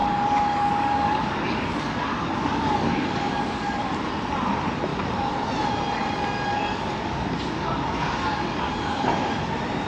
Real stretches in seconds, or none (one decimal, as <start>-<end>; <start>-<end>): 3.8-4.9; 5.5-6.5; 9.3-9.9